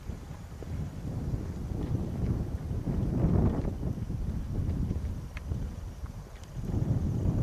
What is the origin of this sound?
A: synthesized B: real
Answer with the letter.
B